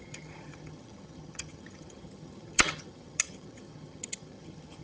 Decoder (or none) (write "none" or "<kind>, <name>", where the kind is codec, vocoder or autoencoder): vocoder, HiFi-GAN